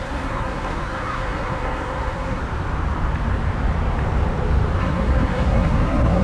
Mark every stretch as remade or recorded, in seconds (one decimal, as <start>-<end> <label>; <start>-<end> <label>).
0.0-2.4 remade; 2.4-4.8 recorded; 4.8-6.2 remade

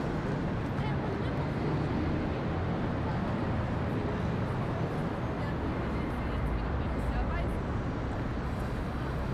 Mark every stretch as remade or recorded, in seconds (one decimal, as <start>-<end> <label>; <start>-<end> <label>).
0.0-9.3 recorded

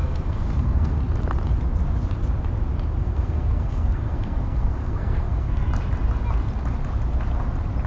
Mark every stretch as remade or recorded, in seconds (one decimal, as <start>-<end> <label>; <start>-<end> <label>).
0.0-1.0 remade; 1.0-3.0 recorded; 3.0-5.7 remade; 5.7-7.9 recorded

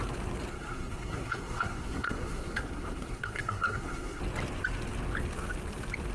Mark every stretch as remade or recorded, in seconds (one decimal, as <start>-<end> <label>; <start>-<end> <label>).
0.0-0.5 recorded; 0.5-4.2 remade; 4.2-6.1 recorded

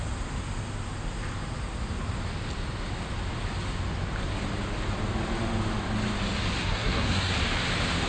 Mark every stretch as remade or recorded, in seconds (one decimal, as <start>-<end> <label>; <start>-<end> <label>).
0.0-6.6 recorded; 6.6-7.3 remade; 7.3-8.1 recorded